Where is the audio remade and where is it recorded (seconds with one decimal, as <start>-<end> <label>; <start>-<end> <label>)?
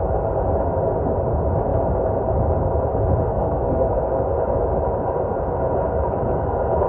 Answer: 0.0-3.3 recorded; 3.3-4.1 remade; 4.1-6.9 recorded